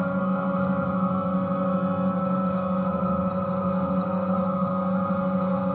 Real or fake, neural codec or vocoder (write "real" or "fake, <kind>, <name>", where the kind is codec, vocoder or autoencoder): fake, codec, SNAC